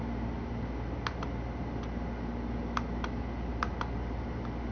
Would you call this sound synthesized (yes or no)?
no